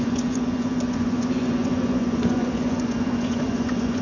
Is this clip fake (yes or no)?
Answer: yes